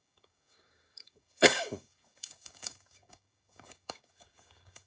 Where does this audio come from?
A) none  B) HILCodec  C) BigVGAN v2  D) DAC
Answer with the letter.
D